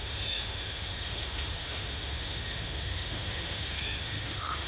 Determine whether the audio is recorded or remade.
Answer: remade